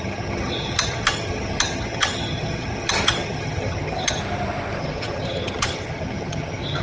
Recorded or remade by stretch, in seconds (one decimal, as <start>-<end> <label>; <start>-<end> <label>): 0.0-4.2 remade; 4.2-4.8 recorded; 4.8-6.8 remade